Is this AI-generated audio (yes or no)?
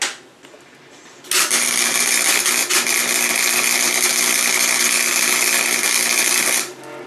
no